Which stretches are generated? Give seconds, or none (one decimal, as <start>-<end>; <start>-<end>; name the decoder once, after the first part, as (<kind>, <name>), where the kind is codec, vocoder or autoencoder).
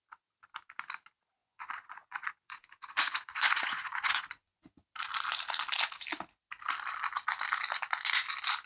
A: 1.4-4.6 (vocoder, Vocos)